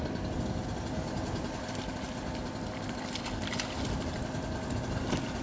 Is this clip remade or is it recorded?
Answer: recorded